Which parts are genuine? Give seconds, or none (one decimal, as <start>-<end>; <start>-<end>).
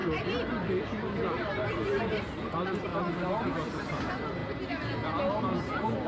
0.8-6.1